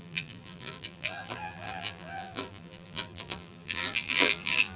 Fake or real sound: fake